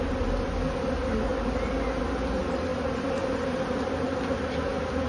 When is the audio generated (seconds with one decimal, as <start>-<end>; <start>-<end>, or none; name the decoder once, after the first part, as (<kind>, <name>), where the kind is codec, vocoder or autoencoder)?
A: none